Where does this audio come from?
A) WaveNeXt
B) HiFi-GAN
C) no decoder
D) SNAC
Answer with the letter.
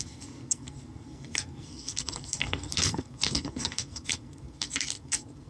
D